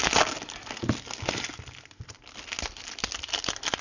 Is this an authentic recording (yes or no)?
yes